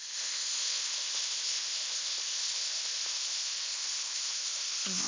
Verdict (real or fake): fake